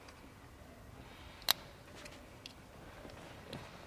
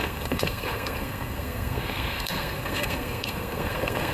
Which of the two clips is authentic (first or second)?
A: first